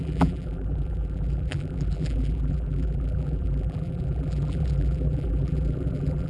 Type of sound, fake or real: fake